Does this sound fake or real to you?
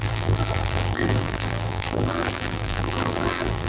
fake